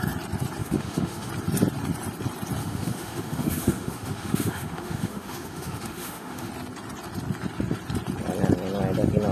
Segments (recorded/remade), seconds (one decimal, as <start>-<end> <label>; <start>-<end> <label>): 0.0-0.6 recorded; 0.6-1.3 remade; 1.3-2.6 recorded; 2.6-6.5 remade; 6.5-9.3 recorded